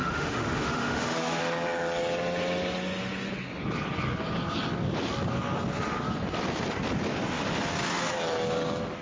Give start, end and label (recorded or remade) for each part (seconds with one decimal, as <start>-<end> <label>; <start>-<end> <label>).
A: 0.0-1.4 remade; 1.4-9.0 recorded